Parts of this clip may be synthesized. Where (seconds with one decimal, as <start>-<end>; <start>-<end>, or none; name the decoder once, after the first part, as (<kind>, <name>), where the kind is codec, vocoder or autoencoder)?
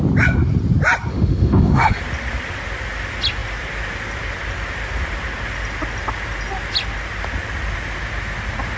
1.1-2.0 (autoencoder, DAC-VAE)